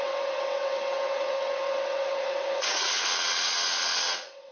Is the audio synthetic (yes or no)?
yes